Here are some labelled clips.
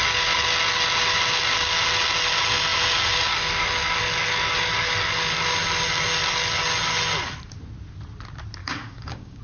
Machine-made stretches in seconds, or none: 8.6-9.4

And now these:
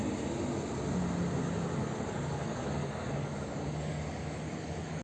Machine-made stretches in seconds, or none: 1.8-5.0

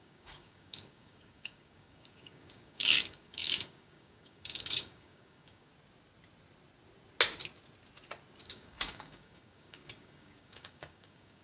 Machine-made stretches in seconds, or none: 0.0-5.7; 8.4-11.4